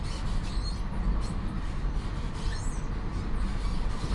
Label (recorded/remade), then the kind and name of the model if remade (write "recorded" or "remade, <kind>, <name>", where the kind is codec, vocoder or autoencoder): recorded